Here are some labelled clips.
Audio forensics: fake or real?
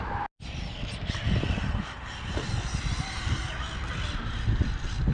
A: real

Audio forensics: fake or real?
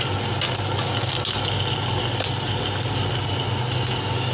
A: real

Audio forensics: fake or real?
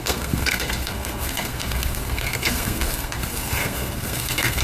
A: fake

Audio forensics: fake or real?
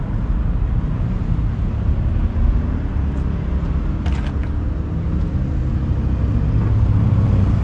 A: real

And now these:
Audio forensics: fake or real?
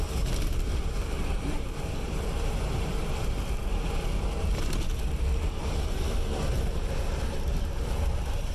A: fake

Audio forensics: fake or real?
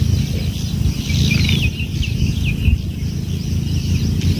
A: real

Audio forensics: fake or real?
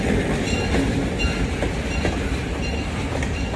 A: real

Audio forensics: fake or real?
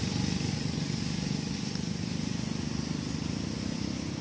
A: real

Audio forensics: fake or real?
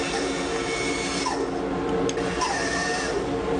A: real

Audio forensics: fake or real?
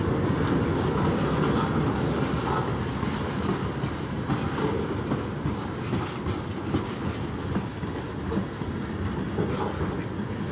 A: real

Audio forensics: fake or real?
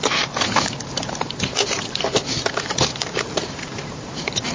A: fake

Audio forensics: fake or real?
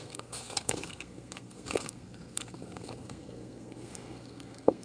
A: fake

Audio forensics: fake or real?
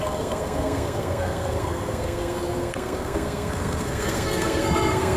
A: fake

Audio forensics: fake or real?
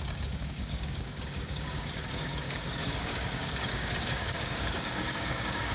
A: fake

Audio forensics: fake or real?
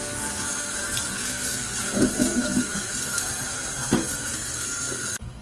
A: fake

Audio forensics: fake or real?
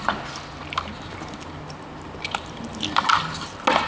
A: real